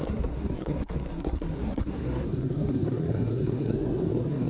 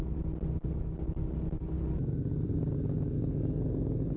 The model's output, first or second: first